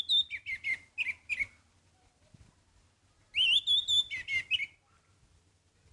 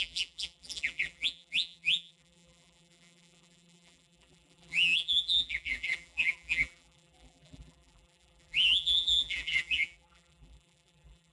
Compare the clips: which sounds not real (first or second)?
second